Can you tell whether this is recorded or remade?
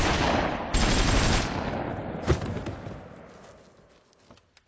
recorded